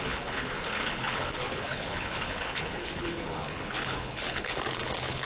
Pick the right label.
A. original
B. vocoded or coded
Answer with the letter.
B